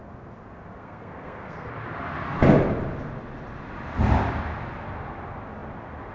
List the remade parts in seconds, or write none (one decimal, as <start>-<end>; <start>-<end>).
0.8-1.7